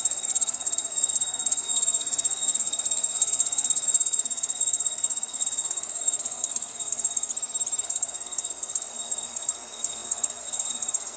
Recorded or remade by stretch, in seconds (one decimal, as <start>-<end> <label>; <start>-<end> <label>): 0.0-7.3 remade; 7.3-7.8 recorded; 7.8-11.2 remade